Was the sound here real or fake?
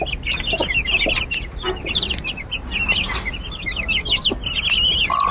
real